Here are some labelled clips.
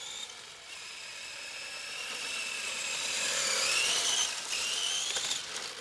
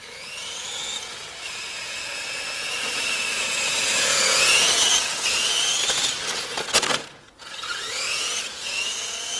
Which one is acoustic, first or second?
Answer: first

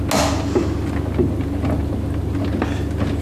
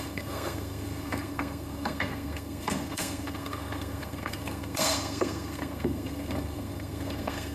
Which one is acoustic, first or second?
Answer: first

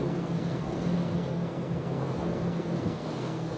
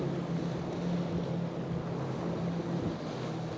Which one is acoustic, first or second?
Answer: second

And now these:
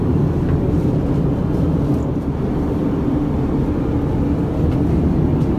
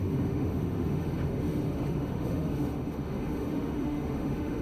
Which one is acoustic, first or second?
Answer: first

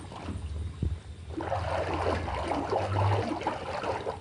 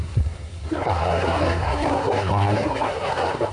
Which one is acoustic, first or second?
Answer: first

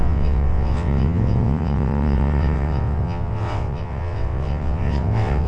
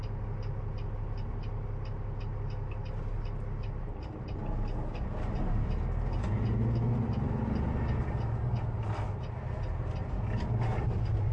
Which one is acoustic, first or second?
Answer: second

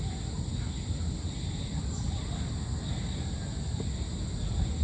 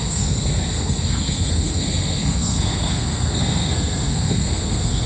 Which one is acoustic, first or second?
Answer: first